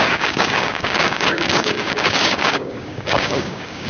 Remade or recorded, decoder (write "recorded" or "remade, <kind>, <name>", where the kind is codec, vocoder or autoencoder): remade, codec, DAC